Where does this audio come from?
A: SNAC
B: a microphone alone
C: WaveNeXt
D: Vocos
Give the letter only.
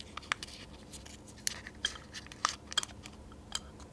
B